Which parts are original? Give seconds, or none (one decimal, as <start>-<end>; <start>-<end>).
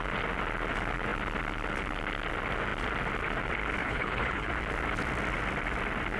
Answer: 0.0-3.8; 4.5-6.2